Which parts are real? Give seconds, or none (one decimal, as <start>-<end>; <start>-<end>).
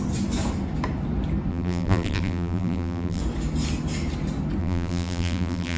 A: 0.0-1.5; 3.2-4.6